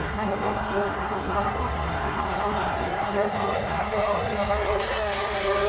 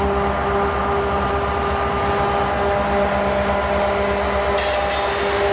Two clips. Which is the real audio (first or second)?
second